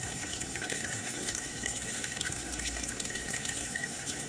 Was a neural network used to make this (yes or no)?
yes